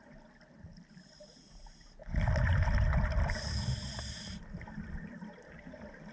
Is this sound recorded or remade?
recorded